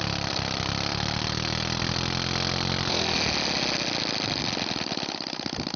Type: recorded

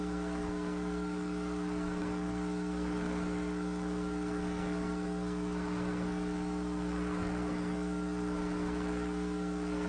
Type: remade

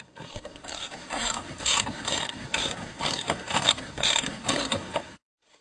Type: remade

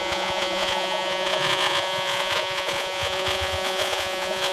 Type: remade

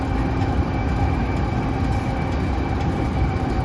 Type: recorded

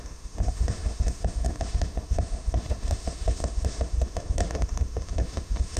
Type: remade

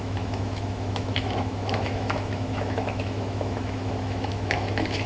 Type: remade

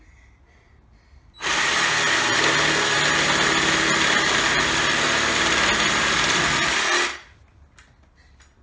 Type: recorded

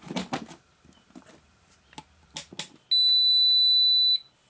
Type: recorded